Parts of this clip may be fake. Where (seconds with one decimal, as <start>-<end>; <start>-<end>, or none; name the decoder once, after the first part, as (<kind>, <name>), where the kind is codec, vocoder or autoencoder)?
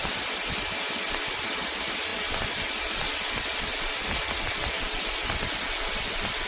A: none